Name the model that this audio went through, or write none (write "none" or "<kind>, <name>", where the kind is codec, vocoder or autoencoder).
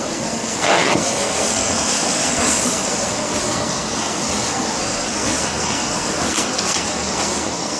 codec, SNAC